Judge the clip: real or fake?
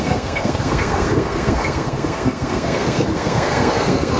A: fake